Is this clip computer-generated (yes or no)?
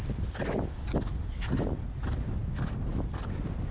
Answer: no